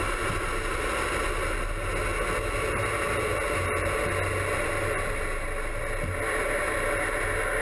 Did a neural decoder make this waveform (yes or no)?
no